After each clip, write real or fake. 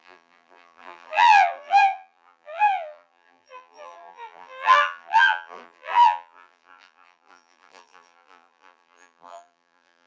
fake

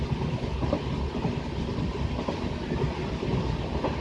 real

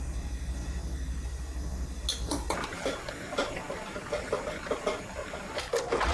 real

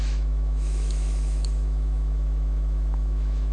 fake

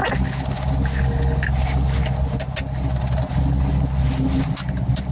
real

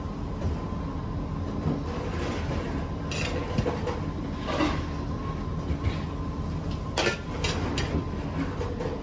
real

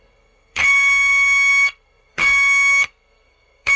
fake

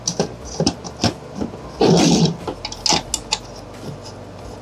real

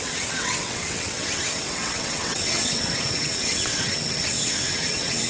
fake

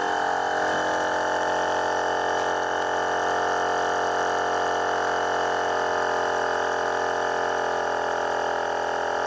real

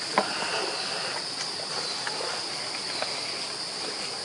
real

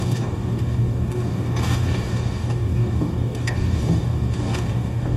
fake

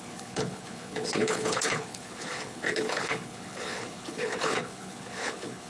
fake